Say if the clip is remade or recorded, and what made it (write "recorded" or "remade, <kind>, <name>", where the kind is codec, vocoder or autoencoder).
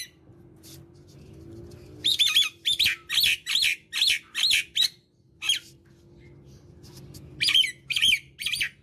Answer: recorded